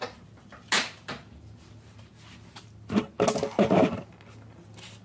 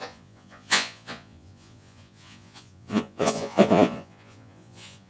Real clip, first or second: first